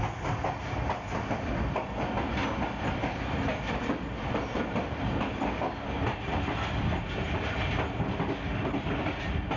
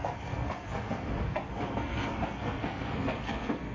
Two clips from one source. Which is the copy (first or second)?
second